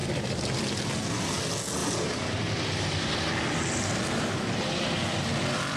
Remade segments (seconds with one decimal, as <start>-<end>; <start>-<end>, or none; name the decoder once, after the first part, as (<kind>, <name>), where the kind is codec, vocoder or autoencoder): 0.0-0.6 (vocoder, BigVGAN v2); 1.8-5.3